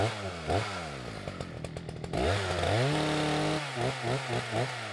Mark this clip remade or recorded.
recorded